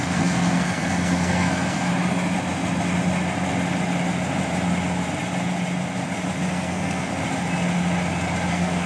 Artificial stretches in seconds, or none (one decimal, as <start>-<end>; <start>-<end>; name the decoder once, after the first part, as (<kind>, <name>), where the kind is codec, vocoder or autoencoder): 0.0-1.9 (codec, SNAC); 6.5-7.1; 8.5-8.9